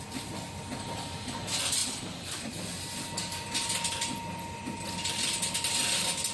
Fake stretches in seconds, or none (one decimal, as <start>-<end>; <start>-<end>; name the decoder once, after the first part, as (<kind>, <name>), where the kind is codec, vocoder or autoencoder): none